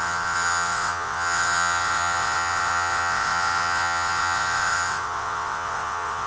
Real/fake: fake